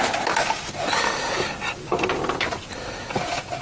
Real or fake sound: real